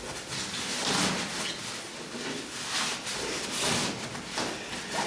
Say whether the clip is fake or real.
real